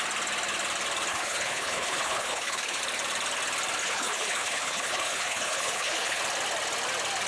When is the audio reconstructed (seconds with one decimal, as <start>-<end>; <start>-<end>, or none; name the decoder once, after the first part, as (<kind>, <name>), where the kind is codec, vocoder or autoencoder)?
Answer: 1.1-2.8 (codec, HILCodec); 3.8-6.2